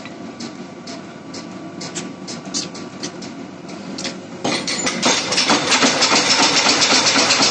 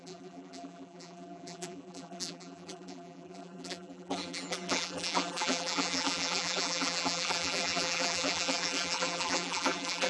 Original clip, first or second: first